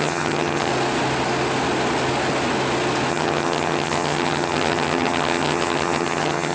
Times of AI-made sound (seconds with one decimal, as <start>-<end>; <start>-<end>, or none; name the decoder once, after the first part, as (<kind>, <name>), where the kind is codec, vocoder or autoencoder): 0.0-0.7 (vocoder, HiFi-GAN); 3.1-6.5